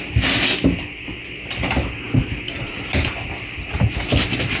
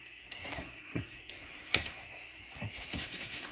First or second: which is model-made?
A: second